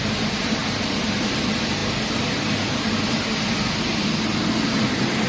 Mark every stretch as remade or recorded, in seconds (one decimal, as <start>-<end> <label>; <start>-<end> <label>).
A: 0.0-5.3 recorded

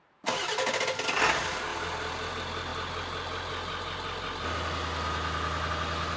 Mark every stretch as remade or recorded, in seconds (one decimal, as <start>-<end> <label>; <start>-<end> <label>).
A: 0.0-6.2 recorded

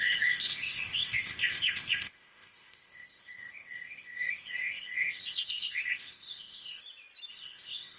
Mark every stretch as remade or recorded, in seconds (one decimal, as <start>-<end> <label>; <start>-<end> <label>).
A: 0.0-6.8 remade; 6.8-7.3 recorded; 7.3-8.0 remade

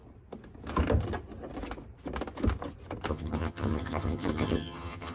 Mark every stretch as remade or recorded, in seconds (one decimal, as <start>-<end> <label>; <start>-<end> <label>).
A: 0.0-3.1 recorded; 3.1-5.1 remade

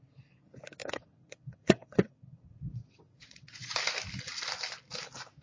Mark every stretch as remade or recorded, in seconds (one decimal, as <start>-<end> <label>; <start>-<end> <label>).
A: 0.0-0.8 recorded; 0.8-3.7 remade; 3.7-5.4 recorded

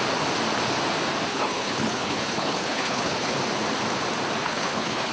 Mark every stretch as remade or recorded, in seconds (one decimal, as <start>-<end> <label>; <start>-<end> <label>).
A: 0.0-1.3 recorded; 1.3-3.3 remade; 3.3-4.4 recorded; 4.4-5.1 remade